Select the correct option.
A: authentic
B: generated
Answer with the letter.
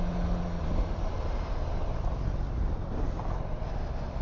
A